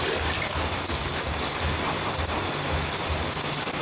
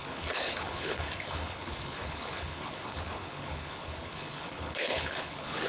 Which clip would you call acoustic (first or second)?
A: first